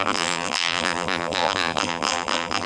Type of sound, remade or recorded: remade